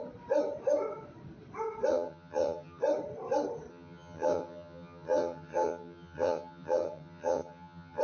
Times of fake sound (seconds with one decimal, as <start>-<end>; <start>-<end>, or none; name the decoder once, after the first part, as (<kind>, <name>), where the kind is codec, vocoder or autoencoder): 1.9-2.8 (vocoder, HiFi-GAN); 3.7-8.0